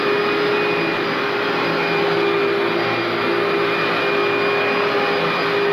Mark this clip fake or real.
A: real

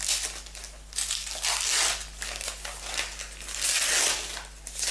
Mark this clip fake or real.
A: real